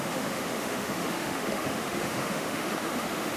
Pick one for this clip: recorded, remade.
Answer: remade